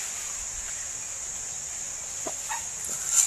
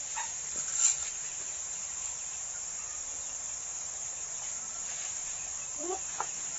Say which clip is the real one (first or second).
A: first